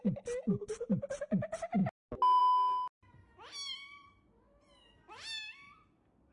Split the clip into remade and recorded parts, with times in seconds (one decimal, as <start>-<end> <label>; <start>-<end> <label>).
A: 0.0-6.3 recorded